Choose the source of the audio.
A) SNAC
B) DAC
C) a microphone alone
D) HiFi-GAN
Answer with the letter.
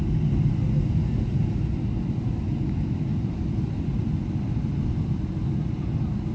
C